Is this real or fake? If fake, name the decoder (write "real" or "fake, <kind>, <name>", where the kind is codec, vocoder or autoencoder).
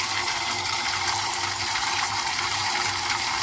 fake, vocoder, BigVGAN v2